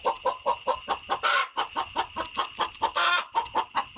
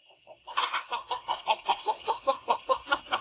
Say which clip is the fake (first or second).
second